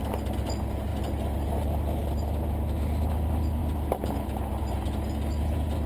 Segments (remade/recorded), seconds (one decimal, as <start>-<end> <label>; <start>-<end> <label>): 0.0-5.9 recorded